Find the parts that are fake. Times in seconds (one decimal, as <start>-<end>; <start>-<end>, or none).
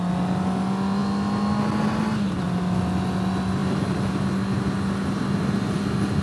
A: none